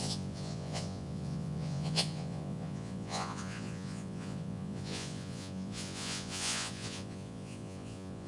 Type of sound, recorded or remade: remade